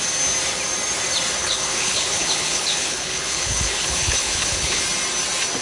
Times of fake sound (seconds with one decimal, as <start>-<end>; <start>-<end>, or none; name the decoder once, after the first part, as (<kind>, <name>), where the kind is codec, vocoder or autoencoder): 1.4-4.8 (codec, HILCodec)